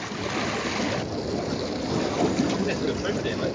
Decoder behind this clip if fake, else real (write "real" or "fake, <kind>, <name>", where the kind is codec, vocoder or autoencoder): real